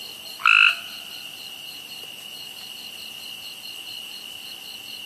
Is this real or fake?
real